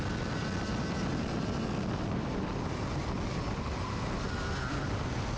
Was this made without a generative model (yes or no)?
yes